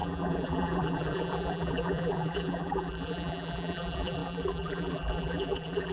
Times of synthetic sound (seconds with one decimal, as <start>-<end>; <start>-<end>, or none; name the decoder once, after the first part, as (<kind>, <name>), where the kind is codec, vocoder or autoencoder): 0.0-5.9 (vocoder, BigVGAN v2)